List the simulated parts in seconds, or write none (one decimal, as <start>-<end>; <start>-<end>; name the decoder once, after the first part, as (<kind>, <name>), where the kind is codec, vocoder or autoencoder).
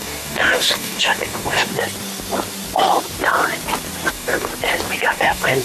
0.0-1.7 (codec, DAC); 4.1-4.5; 5.1-5.6